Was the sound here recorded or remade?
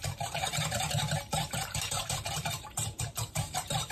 remade